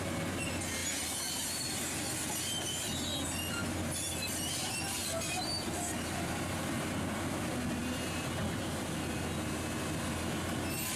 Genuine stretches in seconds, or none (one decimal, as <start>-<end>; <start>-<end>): 0.0-3.6; 6.9-7.8; 8.6-11.0